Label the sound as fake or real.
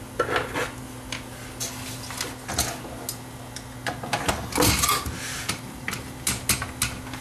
real